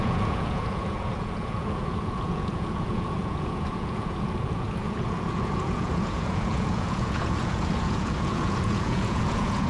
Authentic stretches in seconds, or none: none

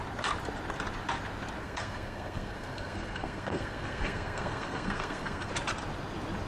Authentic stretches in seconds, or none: 0.0-1.6; 5.5-6.5

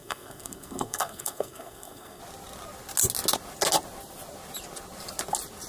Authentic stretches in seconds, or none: 2.2-5.7

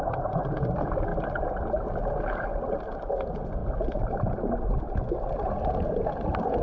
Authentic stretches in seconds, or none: 3.6-6.0

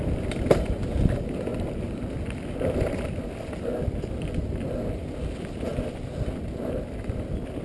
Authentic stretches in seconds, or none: 0.0-7.6

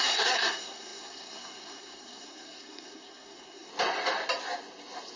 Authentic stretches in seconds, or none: 3.7-5.2

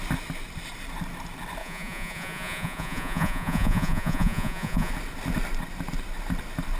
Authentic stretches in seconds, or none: 0.0-1.6; 4.9-6.8

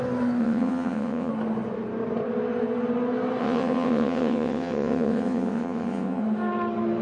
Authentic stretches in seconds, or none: 0.0-0.4; 1.3-3.4; 6.2-7.0